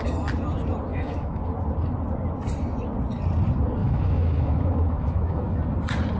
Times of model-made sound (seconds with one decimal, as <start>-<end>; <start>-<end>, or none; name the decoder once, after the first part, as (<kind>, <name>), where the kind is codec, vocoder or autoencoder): 0.9-1.4 (autoencoder, DAC-VAE); 3.8-5.6